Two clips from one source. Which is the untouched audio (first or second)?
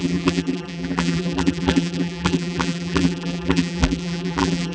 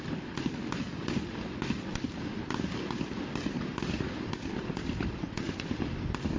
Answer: second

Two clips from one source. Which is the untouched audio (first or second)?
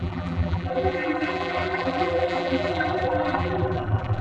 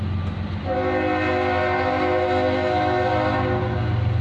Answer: second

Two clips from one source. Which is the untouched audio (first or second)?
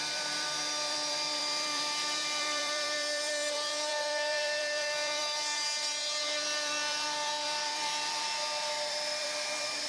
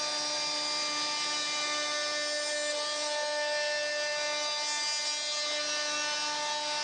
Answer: second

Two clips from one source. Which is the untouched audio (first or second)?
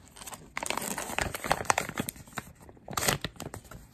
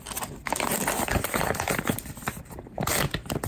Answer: second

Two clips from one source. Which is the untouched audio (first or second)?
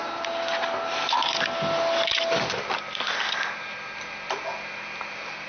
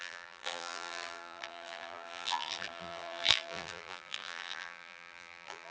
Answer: first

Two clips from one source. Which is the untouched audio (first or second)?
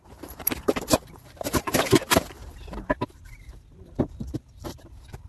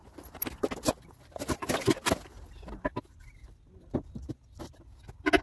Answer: second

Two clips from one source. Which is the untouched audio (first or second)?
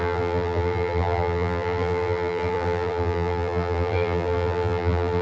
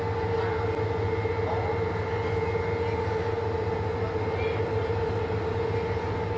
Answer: second